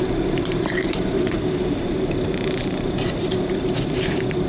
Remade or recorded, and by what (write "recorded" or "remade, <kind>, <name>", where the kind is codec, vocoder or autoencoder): remade, vocoder, BigVGAN v2